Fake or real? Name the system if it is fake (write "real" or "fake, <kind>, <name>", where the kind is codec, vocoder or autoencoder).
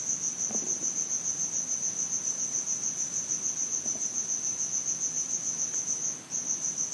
real